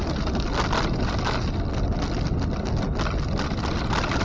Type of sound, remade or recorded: recorded